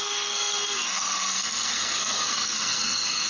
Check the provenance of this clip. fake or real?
fake